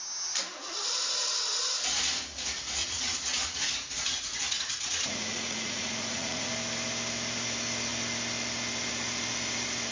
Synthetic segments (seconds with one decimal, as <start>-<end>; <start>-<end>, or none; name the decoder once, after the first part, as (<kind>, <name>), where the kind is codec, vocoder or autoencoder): 2.8-6.5 (vocoder, Vocos)